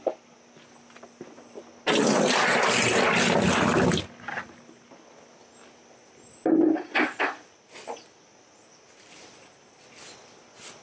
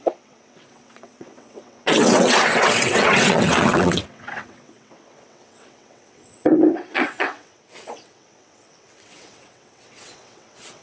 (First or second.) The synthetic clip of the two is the second